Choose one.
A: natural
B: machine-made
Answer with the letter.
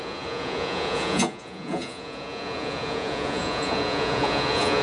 B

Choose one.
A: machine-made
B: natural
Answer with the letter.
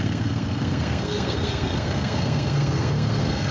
A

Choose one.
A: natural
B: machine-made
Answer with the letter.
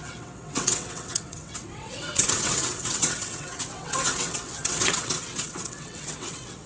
B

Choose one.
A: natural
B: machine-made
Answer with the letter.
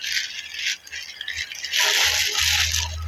A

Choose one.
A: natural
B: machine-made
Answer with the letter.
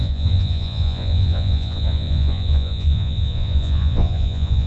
B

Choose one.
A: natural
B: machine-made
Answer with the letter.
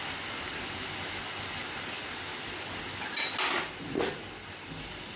A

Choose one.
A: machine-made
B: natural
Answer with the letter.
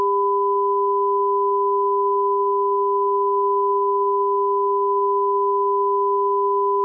B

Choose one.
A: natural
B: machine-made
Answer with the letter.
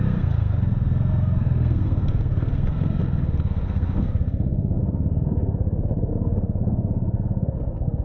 B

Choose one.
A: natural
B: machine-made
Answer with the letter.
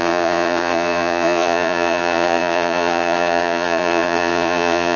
B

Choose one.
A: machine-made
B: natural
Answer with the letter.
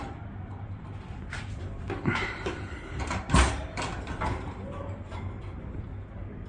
A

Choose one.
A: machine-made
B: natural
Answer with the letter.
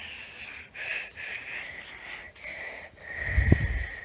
B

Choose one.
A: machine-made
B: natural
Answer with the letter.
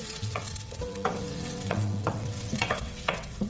A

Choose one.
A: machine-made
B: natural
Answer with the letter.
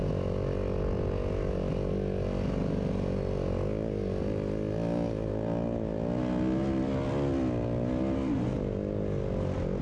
B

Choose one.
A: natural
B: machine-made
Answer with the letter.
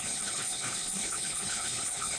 B